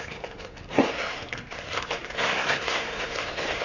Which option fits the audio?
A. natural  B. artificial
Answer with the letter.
B